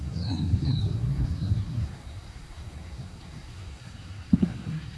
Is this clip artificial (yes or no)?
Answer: yes